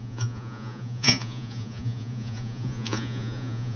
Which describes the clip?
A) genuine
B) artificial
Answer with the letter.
B